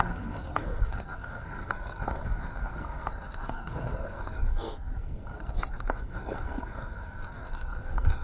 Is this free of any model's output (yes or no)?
no